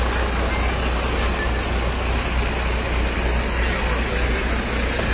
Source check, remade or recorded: recorded